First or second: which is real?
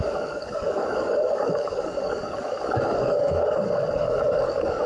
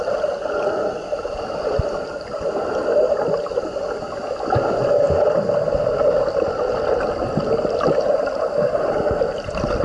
second